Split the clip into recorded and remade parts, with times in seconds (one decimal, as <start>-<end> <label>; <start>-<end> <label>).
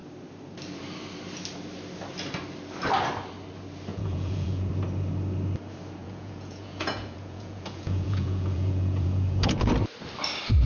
0.0-3.9 recorded; 3.9-4.7 remade; 4.7-6.0 recorded; 6.0-9.7 remade; 9.7-10.7 recorded